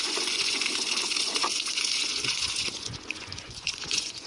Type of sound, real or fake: fake